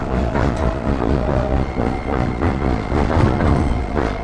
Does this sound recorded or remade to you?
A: remade